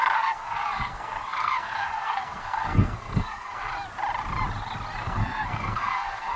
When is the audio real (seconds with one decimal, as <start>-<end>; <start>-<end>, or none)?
3.7-5.0